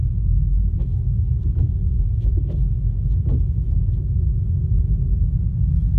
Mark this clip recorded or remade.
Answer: remade